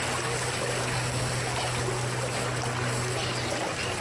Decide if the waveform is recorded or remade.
recorded